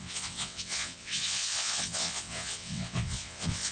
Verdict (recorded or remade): remade